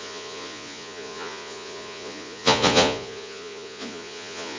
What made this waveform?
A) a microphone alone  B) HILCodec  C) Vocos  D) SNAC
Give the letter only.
C